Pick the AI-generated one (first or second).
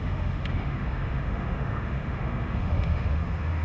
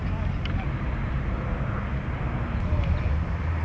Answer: first